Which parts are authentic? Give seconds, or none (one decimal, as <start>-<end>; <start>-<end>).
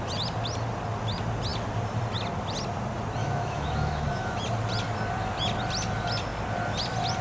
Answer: 0.0-3.2; 4.4-7.2